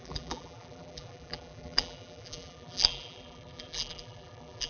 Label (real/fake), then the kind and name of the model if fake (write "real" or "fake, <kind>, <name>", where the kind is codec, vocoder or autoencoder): fake, vocoder, BigVGAN v2